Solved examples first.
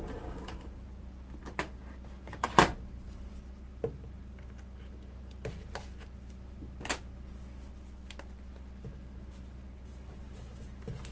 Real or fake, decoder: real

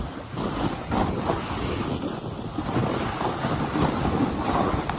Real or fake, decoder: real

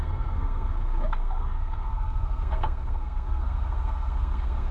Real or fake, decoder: fake, codec, SNAC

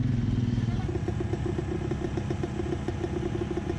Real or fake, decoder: real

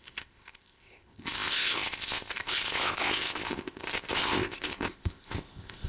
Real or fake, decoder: fake, codec, ZipCodec